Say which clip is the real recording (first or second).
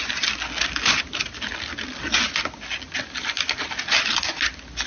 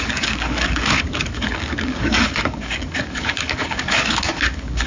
first